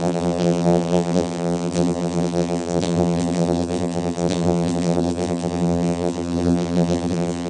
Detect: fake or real fake